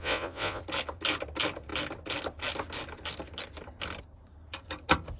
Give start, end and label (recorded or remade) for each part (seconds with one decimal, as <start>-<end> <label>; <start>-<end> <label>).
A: 0.0-0.6 remade; 0.6-5.2 recorded